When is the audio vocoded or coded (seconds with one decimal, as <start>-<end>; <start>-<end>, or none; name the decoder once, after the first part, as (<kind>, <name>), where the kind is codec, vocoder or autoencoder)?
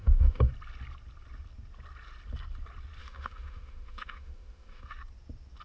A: 0.0-0.5 (autoencoder, DAC-VAE); 3.0-4.9